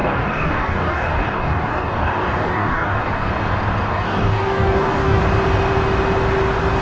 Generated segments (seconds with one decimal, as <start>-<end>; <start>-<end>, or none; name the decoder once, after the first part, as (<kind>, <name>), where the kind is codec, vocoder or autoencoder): 0.0-3.3 (codec, DAC); 3.9-5.2